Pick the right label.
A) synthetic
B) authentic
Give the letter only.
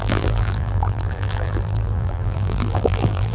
A